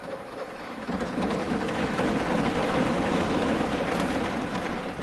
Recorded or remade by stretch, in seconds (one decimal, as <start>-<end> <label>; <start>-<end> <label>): 0.0-0.9 remade; 0.9-1.4 recorded; 1.4-2.1 remade; 2.1-2.6 recorded; 2.6-3.6 remade; 3.6-5.0 recorded